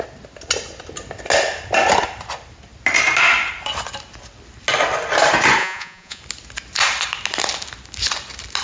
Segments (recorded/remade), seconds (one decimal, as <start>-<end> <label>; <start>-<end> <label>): 0.0-5.6 recorded; 5.6-6.2 remade; 6.2-8.6 recorded